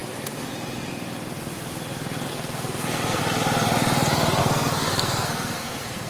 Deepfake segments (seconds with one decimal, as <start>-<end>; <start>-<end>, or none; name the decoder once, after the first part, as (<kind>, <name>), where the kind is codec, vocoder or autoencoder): 2.3-3.2 (codec, SNAC); 4.4-6.1